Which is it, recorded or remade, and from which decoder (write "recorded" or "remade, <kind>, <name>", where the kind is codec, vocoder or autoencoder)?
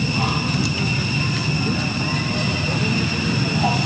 recorded